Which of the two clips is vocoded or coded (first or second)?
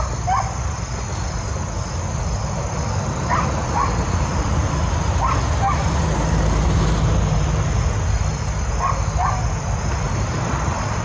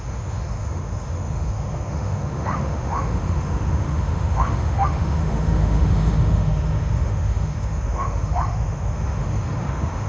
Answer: second